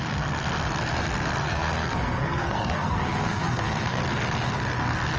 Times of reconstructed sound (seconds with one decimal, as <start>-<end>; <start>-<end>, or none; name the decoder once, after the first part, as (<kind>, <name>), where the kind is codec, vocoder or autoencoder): 1.5-4.0 (codec, SNAC)